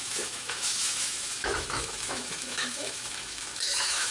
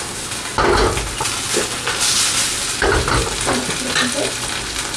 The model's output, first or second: first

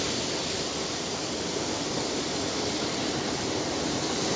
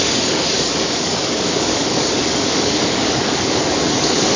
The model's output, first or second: second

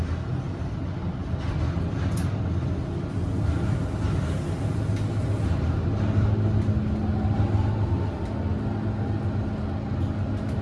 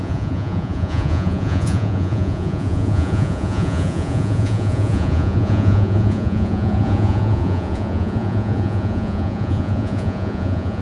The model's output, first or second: second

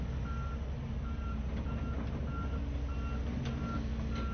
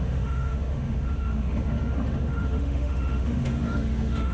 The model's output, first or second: second